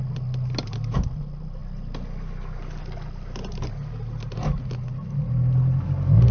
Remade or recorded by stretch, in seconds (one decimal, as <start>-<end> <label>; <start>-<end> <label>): 0.0-6.3 recorded